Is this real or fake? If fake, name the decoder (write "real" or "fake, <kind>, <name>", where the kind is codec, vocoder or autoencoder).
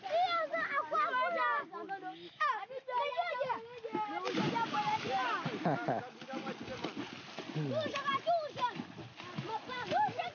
real